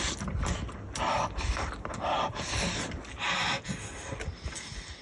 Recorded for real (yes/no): yes